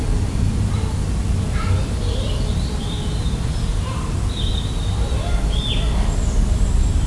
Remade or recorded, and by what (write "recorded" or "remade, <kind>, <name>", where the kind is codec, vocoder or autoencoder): remade, vocoder, BigVGAN v2